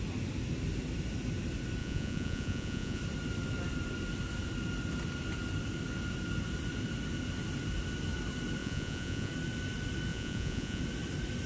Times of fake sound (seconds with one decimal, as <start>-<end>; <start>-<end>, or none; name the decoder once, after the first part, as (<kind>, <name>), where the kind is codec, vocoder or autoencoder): 1.8-3.0 (vocoder, Vocos); 8.6-9.3; 10.1-10.8